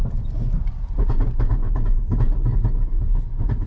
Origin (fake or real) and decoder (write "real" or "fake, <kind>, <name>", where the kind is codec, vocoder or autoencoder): fake, vocoder, BigVGAN v2